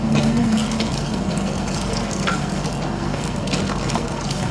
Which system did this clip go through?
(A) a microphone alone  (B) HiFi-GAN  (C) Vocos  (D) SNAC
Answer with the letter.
D